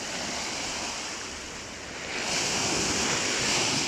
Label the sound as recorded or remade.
recorded